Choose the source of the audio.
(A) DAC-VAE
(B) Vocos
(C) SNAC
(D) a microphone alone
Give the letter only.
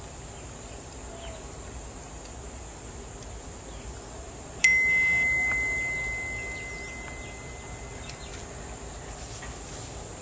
D